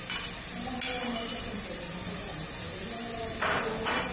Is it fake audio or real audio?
real